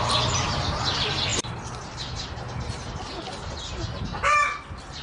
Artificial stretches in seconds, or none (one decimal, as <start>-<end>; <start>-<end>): none